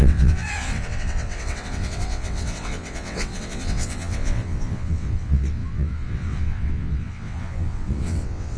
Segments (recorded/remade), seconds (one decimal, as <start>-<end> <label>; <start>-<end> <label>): 0.0-8.6 remade